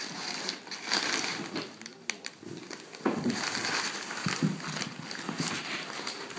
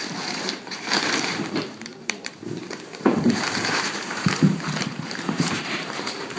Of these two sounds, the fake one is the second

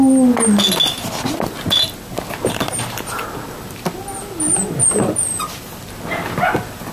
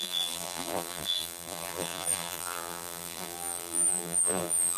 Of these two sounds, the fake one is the second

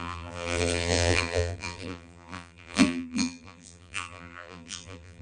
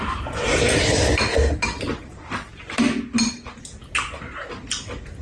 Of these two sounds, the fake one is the first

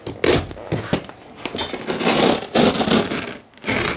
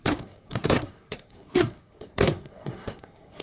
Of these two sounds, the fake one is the second